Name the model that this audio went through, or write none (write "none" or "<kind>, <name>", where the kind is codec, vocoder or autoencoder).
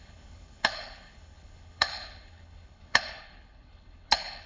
codec, HILCodec